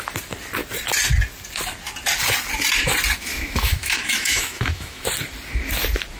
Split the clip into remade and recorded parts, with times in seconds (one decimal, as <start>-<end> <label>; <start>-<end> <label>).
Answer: 0.0-3.3 recorded; 3.3-5.1 remade; 5.1-6.2 recorded